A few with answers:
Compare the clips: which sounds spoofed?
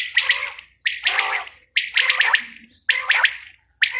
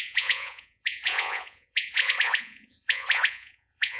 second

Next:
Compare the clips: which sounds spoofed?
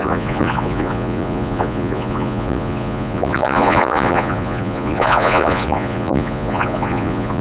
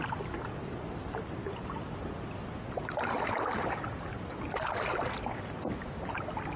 first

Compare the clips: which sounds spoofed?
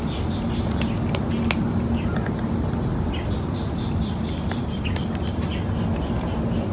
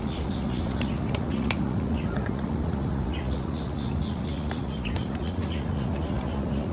second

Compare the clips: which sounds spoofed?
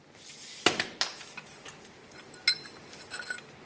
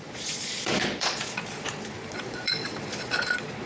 second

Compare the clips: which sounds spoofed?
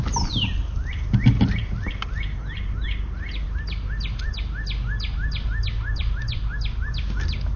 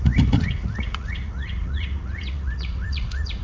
second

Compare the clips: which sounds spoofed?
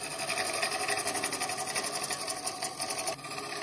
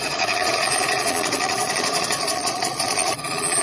second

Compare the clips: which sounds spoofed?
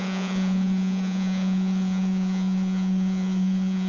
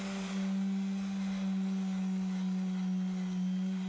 first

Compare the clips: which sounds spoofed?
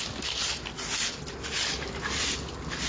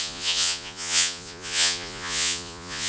second